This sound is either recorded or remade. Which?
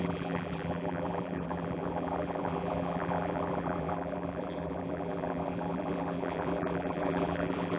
remade